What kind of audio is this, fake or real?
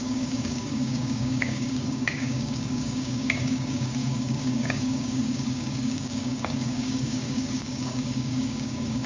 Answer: fake